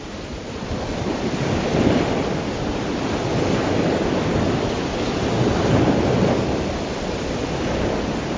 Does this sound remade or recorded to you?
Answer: recorded